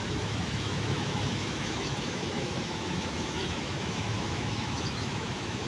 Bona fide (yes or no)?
no